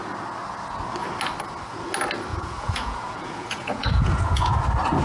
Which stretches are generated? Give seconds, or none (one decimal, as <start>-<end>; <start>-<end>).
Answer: 2.3-4.6